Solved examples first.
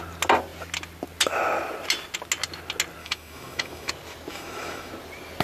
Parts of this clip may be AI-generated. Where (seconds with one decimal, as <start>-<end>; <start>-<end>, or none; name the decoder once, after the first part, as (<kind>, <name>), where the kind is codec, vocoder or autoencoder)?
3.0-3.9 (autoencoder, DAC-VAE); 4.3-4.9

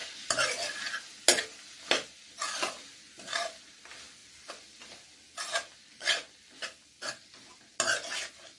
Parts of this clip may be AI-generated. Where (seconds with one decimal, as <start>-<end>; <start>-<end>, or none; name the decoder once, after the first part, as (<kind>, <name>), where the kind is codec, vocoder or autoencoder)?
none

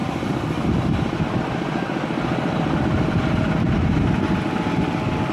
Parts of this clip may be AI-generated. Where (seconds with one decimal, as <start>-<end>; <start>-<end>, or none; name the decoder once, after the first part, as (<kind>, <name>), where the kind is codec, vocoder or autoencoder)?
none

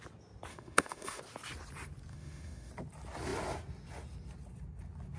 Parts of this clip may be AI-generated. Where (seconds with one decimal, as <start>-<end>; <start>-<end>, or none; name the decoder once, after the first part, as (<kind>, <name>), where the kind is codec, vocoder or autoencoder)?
0.5-1.2 (autoencoder, DAC-VAE); 2.1-2.7